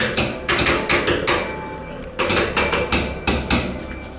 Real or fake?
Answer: real